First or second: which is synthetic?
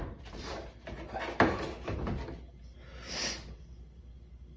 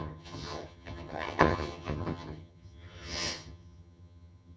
second